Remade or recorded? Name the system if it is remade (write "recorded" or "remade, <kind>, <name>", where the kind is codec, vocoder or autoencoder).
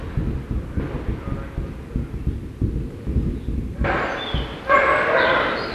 recorded